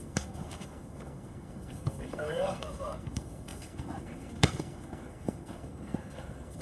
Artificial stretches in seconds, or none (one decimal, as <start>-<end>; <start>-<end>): 0.0-6.6